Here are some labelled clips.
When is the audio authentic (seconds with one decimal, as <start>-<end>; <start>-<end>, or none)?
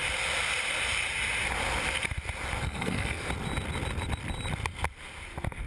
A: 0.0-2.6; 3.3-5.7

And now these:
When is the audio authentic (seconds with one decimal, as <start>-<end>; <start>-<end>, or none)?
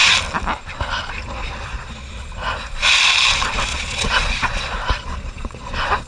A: 0.0-1.4; 2.1-3.7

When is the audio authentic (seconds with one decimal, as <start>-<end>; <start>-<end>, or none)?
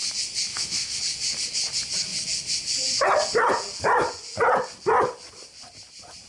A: 0.0-0.5; 1.0-6.3